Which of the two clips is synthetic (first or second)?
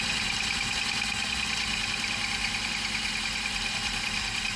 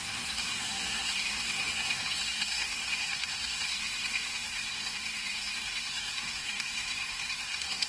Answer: second